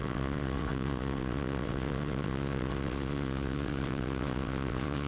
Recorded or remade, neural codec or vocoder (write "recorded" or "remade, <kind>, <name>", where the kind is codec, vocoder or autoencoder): remade, vocoder, WaveNeXt